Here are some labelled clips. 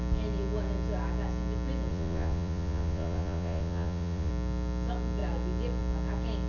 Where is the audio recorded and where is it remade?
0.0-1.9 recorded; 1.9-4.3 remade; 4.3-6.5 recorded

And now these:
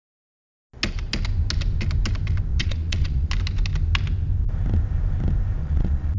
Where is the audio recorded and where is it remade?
0.0-2.5 recorded; 2.5-3.3 remade; 3.3-5.6 recorded; 5.6-6.2 remade

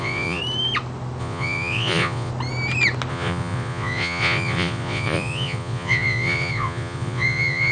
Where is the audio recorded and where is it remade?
0.0-0.4 remade; 0.4-1.2 recorded; 1.2-2.3 remade; 2.3-3.1 recorded; 3.1-7.7 remade